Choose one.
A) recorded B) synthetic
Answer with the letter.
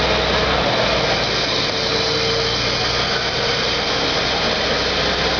A